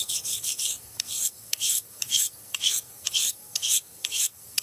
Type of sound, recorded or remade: remade